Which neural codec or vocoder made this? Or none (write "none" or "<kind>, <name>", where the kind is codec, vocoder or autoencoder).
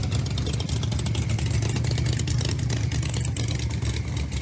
none